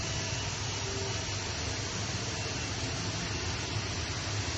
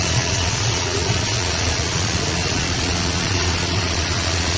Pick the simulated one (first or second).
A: second